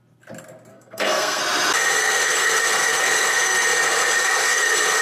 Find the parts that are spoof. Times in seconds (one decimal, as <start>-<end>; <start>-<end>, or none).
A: 0.7-1.4; 2.0-5.0